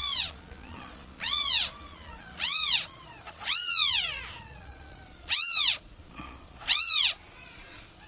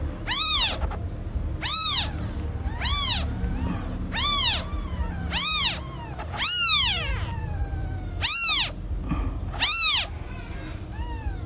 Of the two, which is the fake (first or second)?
first